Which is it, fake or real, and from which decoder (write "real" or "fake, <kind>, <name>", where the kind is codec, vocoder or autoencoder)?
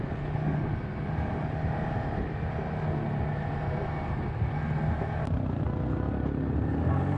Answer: real